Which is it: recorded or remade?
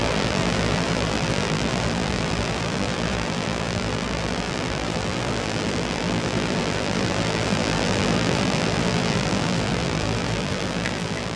remade